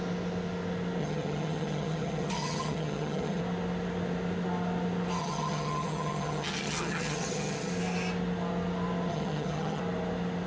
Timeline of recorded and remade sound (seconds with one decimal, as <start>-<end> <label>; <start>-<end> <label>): 0.0-1.0 recorded; 1.0-3.4 remade; 3.4-5.2 recorded; 5.2-7.7 remade; 7.7-9.1 recorded; 9.1-9.8 remade; 9.8-10.5 recorded